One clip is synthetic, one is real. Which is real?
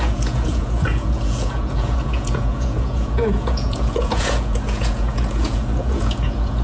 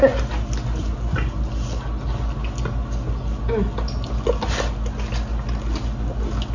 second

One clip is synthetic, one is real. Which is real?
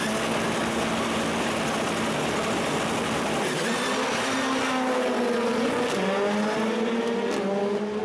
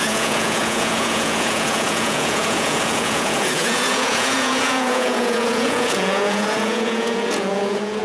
first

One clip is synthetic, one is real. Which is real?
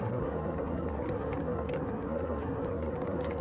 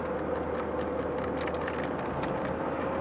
second